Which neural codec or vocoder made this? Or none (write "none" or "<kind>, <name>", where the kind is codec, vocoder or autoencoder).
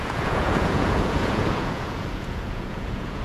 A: vocoder, Vocos